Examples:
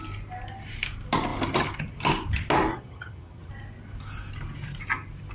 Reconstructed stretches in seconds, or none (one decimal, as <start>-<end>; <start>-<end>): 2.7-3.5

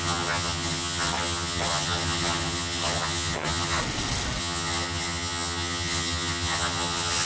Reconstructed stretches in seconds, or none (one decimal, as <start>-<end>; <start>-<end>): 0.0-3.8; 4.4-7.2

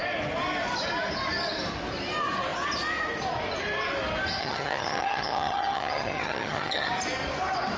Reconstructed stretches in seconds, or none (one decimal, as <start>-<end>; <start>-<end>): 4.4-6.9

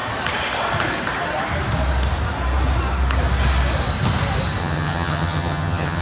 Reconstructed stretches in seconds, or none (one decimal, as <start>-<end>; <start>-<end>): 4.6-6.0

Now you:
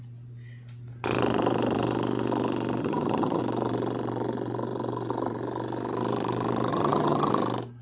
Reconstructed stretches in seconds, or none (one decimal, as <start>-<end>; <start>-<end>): 2.8-3.4; 6.7-7.3

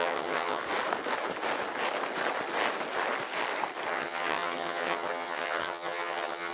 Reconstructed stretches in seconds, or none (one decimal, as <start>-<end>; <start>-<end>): 0.0-0.6; 3.9-6.5

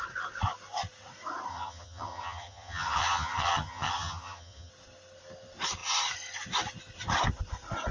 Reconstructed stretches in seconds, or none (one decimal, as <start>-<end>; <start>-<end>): 1.5-4.7